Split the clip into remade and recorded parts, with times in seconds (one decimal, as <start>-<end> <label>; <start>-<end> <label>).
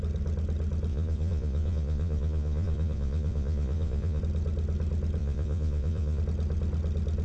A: 0.0-0.9 recorded; 0.9-4.2 remade; 4.2-5.2 recorded; 5.2-6.2 remade; 6.2-7.2 recorded